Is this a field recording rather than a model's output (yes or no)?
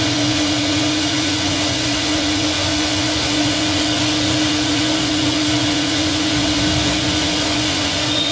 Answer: no